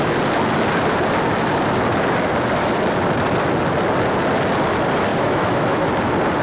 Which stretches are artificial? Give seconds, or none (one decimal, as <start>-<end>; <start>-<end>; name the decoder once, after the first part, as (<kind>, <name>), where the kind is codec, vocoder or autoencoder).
5.1-5.9 (autoencoder, DAC-VAE)